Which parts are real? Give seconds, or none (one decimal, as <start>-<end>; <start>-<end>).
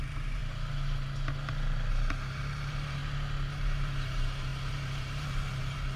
0.4-1.9; 3.0-3.5